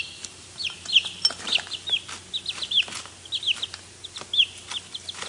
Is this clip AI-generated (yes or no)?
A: no